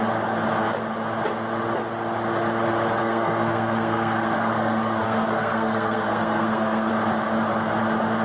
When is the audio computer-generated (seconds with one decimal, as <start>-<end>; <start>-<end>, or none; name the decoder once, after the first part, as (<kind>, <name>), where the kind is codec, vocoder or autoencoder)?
3.0-6.9 (codec, SNAC)

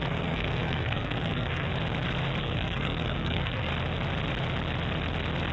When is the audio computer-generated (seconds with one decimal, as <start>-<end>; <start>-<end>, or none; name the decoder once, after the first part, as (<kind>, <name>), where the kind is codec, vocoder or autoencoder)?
0.0-1.7 (codec, SNAC); 2.4-3.7

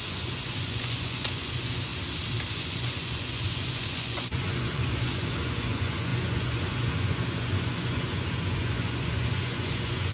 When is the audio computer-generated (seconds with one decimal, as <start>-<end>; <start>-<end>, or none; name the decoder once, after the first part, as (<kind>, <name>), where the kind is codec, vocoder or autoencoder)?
0.0-1.9 (vocoder, Vocos); 2.5-10.1

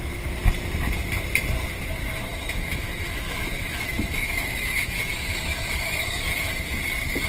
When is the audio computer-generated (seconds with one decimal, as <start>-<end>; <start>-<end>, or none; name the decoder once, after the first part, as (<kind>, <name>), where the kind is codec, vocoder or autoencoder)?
2.3-6.5 (autoencoder, DAC-VAE)